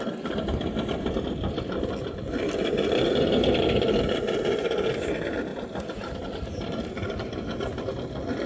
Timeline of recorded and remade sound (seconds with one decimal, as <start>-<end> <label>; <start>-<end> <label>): 0.0-8.5 recorded